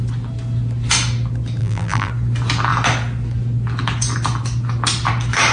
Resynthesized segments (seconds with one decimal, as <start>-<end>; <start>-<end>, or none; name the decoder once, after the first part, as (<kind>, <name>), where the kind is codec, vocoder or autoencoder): 1.6-2.1 (vocoder, BigVGAN v2)